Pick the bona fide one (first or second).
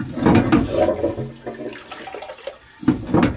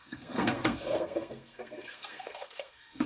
first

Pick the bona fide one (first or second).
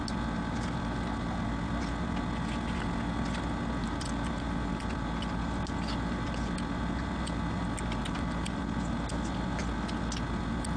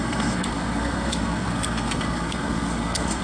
first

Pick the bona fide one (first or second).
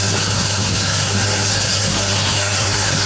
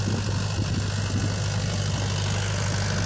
second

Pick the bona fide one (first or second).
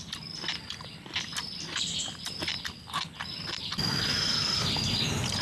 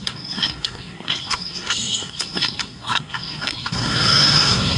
first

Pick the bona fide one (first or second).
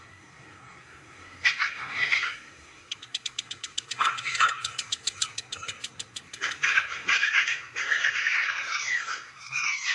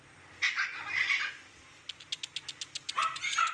second